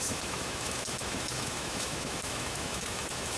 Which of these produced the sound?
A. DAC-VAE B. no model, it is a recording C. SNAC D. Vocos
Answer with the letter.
A